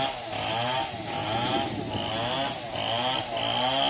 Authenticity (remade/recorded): recorded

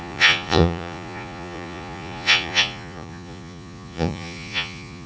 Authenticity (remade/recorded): remade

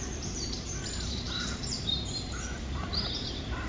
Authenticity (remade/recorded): remade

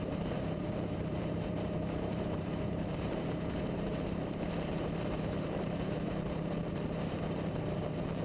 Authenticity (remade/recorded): remade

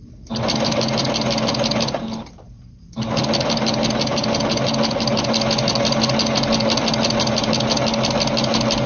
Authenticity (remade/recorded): recorded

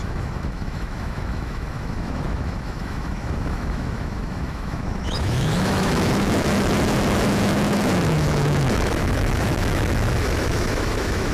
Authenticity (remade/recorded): remade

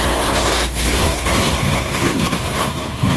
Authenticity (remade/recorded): remade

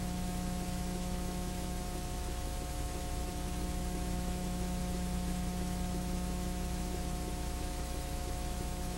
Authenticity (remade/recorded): remade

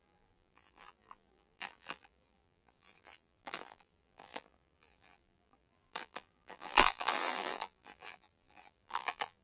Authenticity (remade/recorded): remade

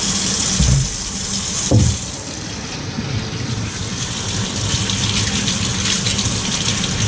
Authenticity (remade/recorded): recorded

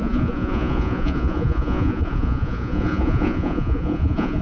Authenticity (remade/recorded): remade